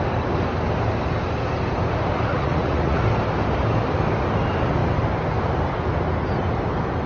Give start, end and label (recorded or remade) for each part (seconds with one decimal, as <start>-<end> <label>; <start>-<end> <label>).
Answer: 0.0-2.3 recorded; 2.3-3.0 remade; 3.0-7.1 recorded